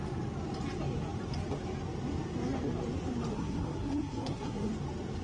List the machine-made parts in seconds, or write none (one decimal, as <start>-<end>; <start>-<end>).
3.3-4.7